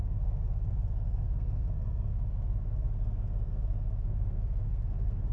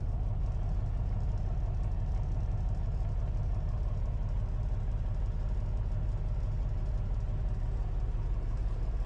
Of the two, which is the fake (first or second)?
first